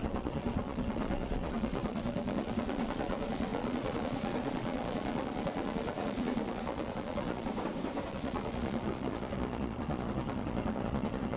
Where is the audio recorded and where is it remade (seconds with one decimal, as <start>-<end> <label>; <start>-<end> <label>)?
0.0-7.5 remade; 7.5-8.1 recorded; 8.1-11.4 remade